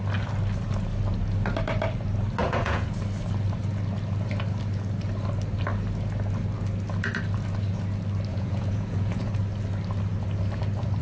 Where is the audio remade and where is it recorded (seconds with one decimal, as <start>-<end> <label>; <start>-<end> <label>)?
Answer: 0.0-2.4 recorded; 2.4-2.9 remade; 2.9-8.3 recorded; 8.3-9.3 remade; 9.3-11.0 recorded